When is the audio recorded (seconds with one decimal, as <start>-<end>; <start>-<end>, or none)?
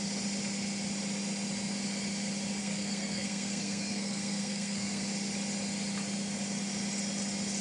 0.0-2.6; 5.0-7.6